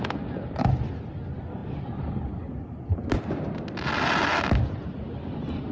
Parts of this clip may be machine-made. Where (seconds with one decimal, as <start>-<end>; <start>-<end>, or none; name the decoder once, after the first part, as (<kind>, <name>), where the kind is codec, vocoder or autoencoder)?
none